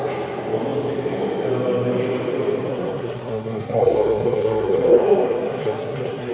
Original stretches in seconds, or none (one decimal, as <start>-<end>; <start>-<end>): 0.0-2.7